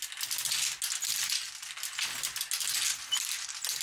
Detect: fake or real real